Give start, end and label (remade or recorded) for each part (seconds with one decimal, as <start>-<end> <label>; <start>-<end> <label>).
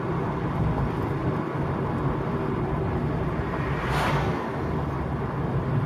0.0-5.9 recorded